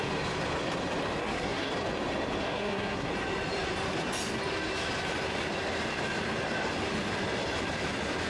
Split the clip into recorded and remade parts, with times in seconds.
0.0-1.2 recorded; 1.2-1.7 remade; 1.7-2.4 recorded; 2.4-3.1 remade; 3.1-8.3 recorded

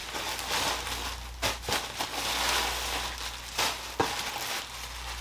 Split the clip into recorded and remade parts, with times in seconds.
0.0-5.2 recorded

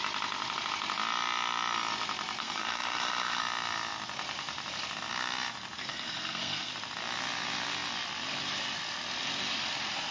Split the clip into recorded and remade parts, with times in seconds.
0.0-2.4 recorded; 2.4-3.4 remade; 3.4-5.9 recorded; 5.9-6.7 remade; 6.7-10.1 recorded

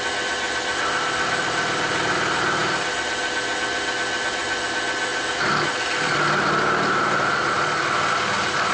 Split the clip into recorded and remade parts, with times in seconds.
0.0-8.7 recorded

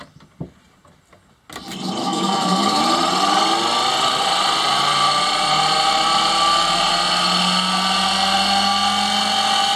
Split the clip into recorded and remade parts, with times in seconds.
0.0-2.0 recorded; 2.0-2.8 remade; 2.8-9.8 recorded